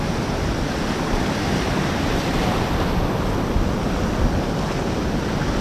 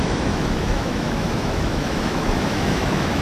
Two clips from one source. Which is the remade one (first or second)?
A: second